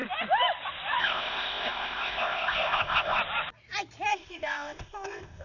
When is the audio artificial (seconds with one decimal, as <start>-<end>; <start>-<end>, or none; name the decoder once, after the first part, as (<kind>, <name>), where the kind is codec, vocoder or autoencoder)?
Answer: 1.0-3.2 (codec, ZipCodec); 4.1-5.4